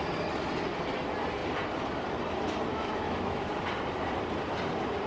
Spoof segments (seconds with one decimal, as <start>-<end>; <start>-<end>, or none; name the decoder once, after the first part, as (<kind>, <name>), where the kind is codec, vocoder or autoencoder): 2.7-3.5 (autoencoder, DAC-VAE)